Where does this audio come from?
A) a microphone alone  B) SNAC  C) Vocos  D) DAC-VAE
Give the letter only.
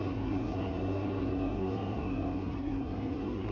B